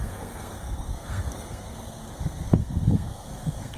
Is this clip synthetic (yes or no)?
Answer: yes